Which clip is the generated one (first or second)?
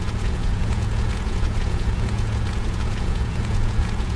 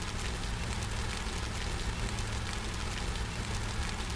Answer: first